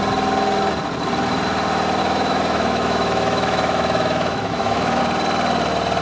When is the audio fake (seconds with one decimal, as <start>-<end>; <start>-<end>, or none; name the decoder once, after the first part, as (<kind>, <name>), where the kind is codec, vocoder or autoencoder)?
2.0-5.0 (autoencoder, DAC-VAE)